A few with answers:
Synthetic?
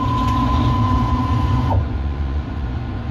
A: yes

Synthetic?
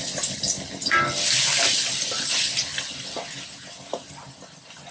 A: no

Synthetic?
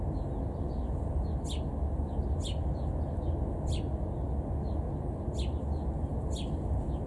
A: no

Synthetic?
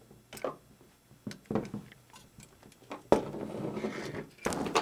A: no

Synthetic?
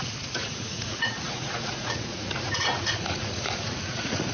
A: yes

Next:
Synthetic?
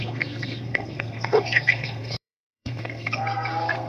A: yes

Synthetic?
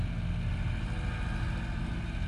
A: no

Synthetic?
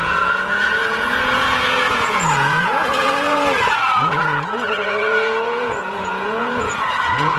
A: yes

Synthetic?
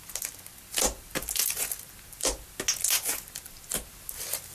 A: no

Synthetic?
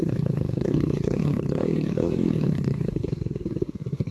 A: yes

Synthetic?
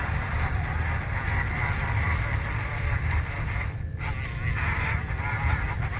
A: no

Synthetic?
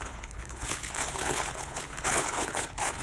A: yes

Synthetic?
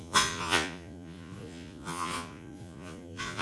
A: yes